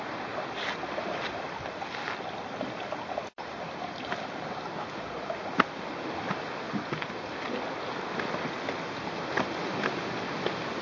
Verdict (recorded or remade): recorded